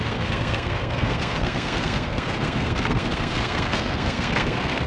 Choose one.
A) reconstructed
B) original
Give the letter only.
A